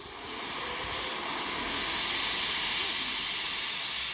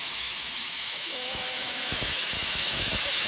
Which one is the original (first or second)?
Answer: first